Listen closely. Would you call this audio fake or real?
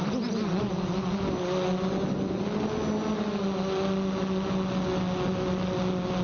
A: real